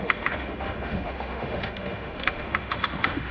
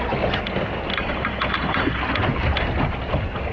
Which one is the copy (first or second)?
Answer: first